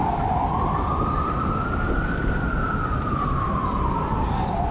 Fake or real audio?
fake